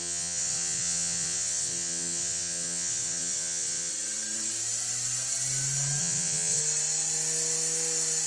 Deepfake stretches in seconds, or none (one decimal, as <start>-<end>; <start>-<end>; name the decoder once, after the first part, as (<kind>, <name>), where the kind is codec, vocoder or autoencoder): 0.0-3.9 (vocoder, WaveNeXt); 6.0-6.6